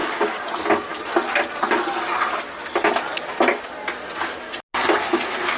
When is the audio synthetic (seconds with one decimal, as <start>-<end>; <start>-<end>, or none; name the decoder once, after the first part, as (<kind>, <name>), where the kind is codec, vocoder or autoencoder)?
0.0-0.5 (codec, DAC)